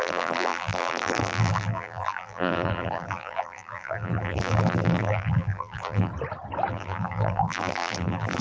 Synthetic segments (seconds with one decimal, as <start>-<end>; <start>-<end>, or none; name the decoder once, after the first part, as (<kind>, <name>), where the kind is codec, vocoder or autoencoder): 0.0-6.1 (vocoder, BigVGAN v2); 6.7-8.4